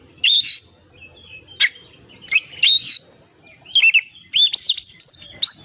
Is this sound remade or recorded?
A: recorded